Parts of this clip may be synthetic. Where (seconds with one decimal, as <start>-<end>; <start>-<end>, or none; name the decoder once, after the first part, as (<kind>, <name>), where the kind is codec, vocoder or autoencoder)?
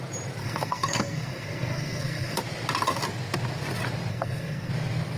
0.4-2.4 (codec, SNAC); 4.1-4.7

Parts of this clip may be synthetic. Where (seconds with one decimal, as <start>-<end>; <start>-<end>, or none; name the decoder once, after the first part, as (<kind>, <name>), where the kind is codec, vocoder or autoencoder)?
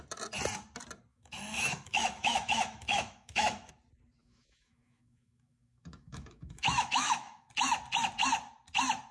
1.1-3.7 (autoencoder, DAC-VAE); 4.2-7.5